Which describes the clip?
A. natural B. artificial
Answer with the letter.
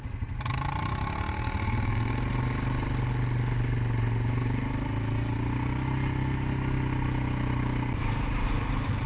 A